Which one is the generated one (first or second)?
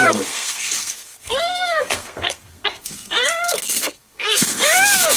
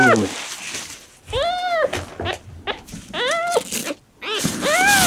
first